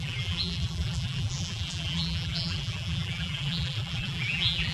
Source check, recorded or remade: remade